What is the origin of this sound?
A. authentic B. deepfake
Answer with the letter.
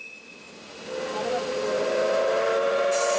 A